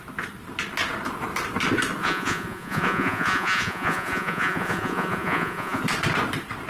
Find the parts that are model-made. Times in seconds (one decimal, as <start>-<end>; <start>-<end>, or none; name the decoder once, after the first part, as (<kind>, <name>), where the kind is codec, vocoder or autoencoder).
2.0-5.8 (vocoder, Vocos)